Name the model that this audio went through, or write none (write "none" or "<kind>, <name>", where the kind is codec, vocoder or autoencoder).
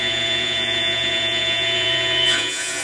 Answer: vocoder, Vocos